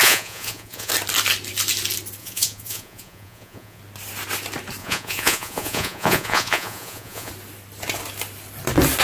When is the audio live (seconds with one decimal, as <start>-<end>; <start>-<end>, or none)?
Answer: 0.9-2.2; 3.8-4.8; 7.3-9.0